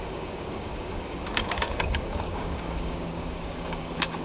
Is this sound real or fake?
fake